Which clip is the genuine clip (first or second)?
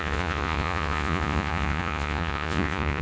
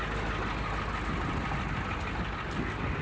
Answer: second